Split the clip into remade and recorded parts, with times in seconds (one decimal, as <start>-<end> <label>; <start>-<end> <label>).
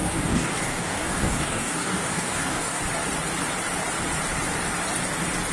0.0-2.8 remade; 2.8-5.5 recorded